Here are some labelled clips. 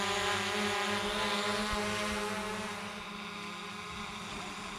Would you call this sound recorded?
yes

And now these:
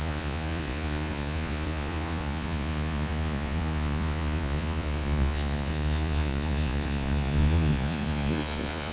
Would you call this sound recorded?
no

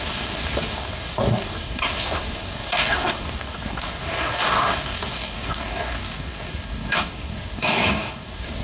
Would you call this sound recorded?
no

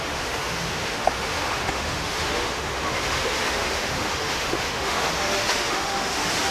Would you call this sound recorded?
no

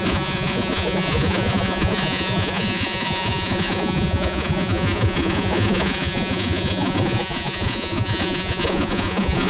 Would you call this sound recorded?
no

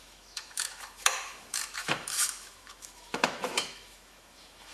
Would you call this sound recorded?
no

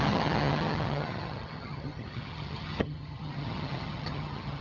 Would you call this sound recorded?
no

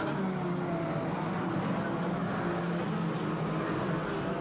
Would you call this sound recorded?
yes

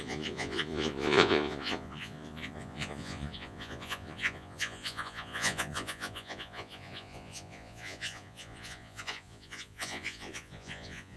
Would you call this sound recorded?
no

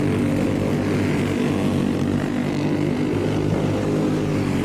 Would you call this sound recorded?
yes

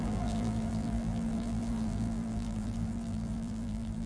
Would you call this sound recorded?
no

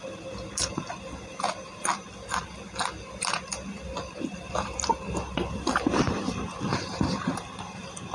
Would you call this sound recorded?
yes